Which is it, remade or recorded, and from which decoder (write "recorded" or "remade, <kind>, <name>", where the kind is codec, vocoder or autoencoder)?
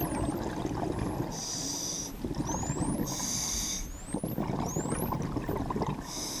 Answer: recorded